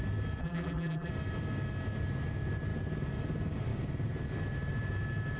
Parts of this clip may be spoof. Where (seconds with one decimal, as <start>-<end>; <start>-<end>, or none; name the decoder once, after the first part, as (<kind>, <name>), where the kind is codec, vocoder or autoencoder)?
0.4-1.1 (vocoder, BigVGAN v2)